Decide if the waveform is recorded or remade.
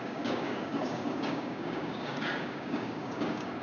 remade